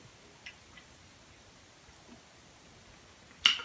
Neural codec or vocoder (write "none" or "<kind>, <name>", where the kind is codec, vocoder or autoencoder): none